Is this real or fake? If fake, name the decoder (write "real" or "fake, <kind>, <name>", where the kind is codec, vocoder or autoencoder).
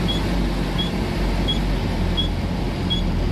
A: real